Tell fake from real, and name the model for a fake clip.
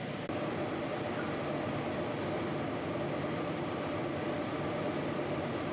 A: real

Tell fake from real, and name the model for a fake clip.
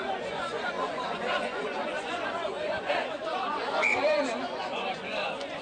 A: fake, vocoder, Vocos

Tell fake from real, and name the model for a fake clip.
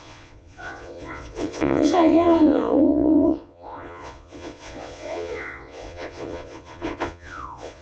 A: fake, vocoder, Vocos